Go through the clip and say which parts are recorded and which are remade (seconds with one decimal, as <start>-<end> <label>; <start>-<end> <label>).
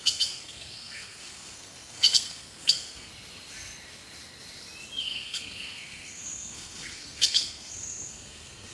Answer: 0.0-3.1 remade; 3.1-5.0 recorded; 5.0-8.7 remade